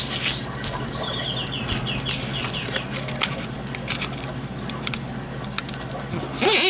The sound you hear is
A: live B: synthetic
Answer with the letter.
A